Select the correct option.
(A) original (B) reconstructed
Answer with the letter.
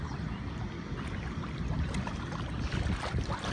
A